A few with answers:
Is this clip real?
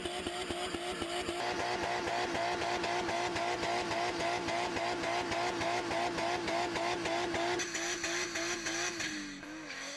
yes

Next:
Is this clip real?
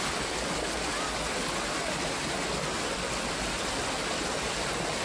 yes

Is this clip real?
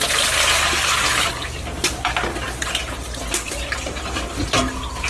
yes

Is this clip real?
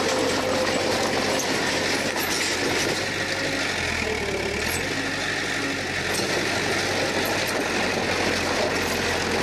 yes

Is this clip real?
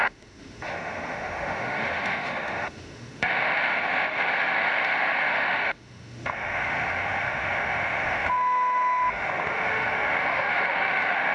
no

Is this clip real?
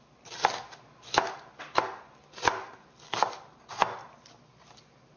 yes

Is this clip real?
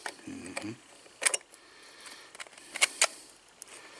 yes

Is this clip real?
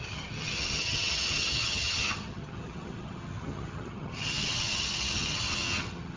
no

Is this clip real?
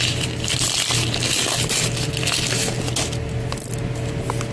yes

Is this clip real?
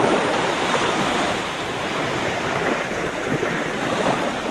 no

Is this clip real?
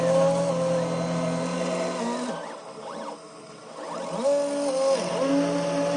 yes